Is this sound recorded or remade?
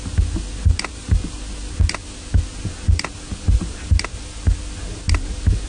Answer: recorded